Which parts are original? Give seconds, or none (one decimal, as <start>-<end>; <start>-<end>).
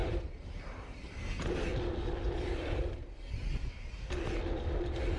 0.6-5.2